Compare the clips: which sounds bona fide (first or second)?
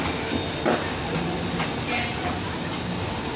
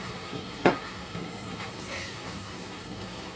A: first